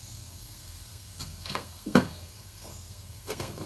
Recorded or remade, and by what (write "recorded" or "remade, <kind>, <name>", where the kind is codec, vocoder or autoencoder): remade, codec, SNAC